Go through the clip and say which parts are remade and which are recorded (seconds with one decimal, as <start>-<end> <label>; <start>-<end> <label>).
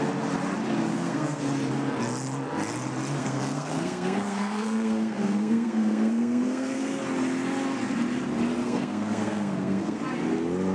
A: 0.0-0.9 recorded; 0.9-1.4 remade; 1.4-3.2 recorded; 3.2-7.0 remade; 7.0-8.6 recorded; 8.6-10.0 remade; 10.0-10.7 recorded